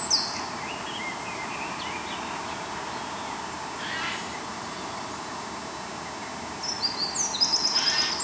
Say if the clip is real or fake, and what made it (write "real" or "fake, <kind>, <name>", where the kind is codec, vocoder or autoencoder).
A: real